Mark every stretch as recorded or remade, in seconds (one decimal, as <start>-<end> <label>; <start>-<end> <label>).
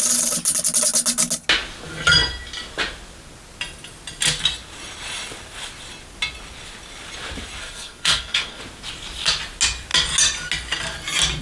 0.0-7.6 recorded; 7.6-8.6 remade; 8.6-11.4 recorded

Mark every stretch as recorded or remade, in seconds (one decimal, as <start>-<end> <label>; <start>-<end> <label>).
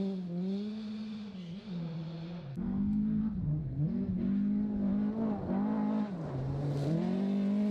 0.0-2.5 recorded; 2.5-3.2 remade; 3.2-3.6 recorded; 3.6-4.1 remade; 4.1-7.7 recorded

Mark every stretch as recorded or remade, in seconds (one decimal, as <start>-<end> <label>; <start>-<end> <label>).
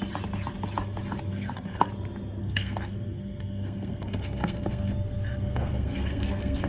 0.0-1.3 recorded; 1.3-1.9 remade; 1.9-2.4 recorded; 2.4-6.7 remade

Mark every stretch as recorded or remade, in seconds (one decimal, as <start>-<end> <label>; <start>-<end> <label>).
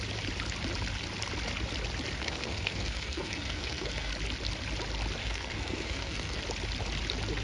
0.0-2.2 recorded; 2.2-4.1 remade; 4.1-5.2 recorded; 5.2-6.4 remade; 6.4-7.4 recorded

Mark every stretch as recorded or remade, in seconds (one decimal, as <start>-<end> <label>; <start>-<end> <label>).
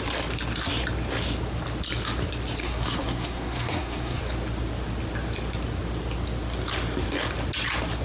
0.0-2.6 recorded; 2.6-4.2 remade; 4.2-8.0 recorded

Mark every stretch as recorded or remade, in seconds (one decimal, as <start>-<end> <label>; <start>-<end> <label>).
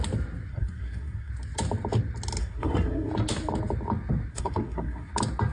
0.0-0.5 recorded; 0.5-1.3 remade; 1.3-2.4 recorded; 2.4-3.1 remade; 3.1-4.3 recorded; 4.3-5.1 remade; 5.1-5.5 recorded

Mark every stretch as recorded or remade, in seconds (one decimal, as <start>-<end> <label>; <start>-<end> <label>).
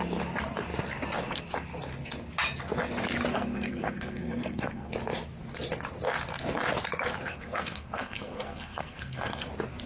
0.0-3.3 recorded; 3.3-4.9 remade; 4.9-7.3 recorded; 7.3-9.5 remade; 9.5-9.9 recorded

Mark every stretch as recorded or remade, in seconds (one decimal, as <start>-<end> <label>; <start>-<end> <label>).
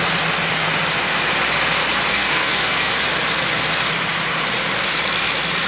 0.0-2.1 recorded; 2.1-2.9 remade; 2.9-5.7 recorded